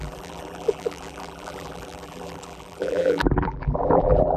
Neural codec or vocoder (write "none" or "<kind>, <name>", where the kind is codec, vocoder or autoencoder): vocoder, BigVGAN v2